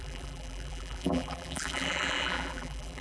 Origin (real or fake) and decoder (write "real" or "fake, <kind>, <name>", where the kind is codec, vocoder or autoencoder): fake, vocoder, BigVGAN v2